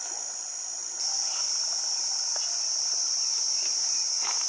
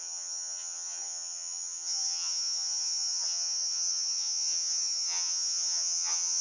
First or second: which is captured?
first